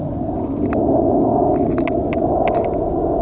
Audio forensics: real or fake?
real